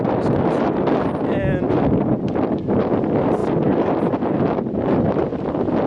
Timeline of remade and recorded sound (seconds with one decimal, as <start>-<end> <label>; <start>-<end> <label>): 0.0-5.9 recorded